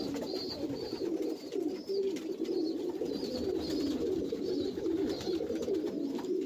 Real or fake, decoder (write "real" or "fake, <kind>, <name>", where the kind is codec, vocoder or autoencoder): real